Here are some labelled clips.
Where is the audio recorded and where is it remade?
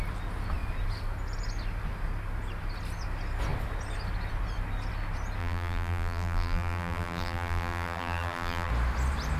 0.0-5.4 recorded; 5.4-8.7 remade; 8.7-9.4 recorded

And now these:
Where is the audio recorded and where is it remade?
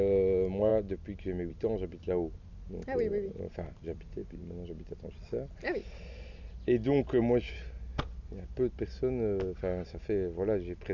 0.0-10.9 recorded